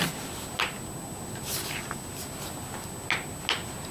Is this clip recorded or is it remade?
recorded